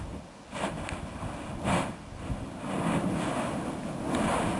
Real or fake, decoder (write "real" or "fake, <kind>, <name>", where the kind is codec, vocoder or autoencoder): real